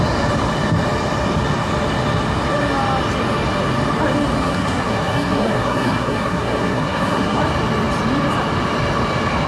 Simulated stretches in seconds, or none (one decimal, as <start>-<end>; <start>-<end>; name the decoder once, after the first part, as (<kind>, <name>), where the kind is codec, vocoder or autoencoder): 4.4-7.4 (codec, SNAC)